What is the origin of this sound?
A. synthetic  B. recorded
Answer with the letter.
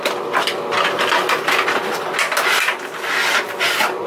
B